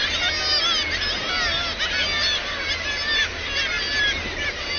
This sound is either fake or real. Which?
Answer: real